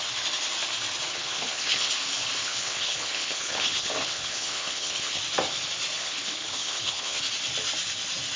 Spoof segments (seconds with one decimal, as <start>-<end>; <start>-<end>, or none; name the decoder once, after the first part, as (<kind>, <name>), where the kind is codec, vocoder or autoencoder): 1.1-1.9 (codec, HILCodec); 2.4-5.2; 6.0-7.2